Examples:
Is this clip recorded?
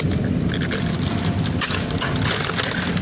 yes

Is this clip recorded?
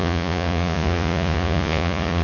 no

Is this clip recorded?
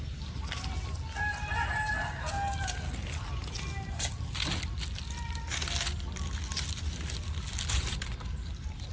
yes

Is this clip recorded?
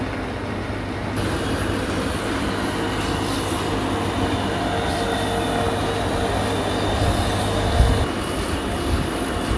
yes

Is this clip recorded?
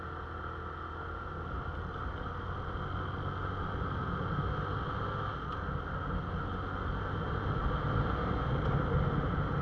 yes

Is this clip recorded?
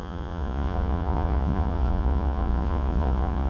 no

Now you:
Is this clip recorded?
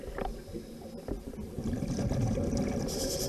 yes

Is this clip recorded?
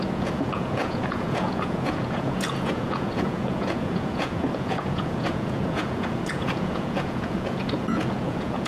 no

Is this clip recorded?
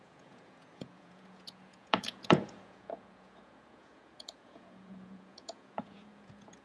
no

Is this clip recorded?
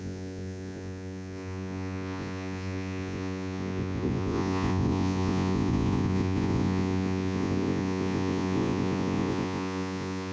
no